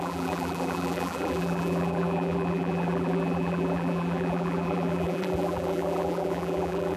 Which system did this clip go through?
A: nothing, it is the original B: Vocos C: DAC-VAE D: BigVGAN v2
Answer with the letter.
D